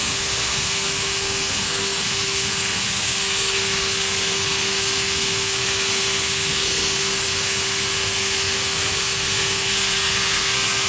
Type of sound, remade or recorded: remade